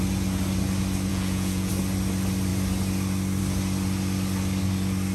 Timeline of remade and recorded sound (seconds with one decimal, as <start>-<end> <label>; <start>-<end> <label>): 0.0-1.1 recorded; 1.1-1.7 remade; 1.7-5.1 recorded